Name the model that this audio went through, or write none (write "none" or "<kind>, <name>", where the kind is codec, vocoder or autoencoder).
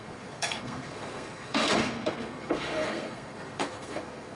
codec, SNAC